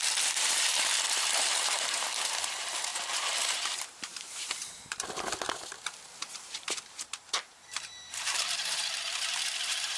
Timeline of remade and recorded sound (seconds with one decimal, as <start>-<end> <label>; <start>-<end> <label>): 0.0-10.0 remade